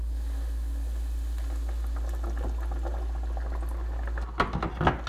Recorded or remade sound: recorded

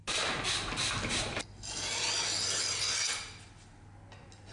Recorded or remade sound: recorded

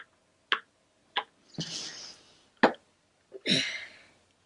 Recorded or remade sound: recorded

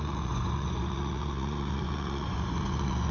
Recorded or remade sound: remade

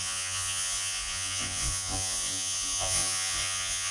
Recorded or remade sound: remade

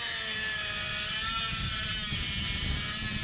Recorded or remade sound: recorded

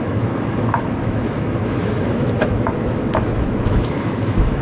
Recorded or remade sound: remade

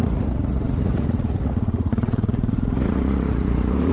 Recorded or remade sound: remade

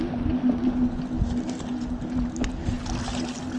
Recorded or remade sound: recorded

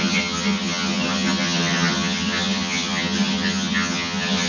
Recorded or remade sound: remade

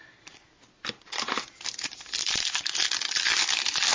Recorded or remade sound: recorded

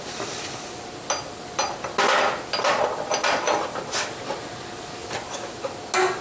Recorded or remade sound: recorded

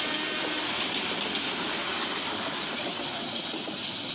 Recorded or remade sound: recorded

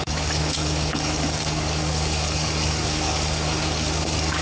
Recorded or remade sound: remade